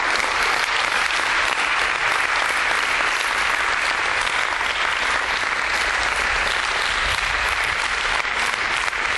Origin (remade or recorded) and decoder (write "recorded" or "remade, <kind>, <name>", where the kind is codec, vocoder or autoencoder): recorded